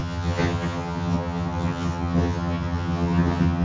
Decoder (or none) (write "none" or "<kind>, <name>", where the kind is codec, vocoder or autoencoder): vocoder, HiFi-GAN